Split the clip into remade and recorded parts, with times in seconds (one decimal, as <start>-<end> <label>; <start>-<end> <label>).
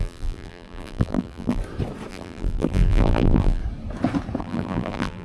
0.0-1.6 remade; 1.6-2.1 recorded; 2.1-3.6 remade; 3.6-4.4 recorded; 4.4-5.2 remade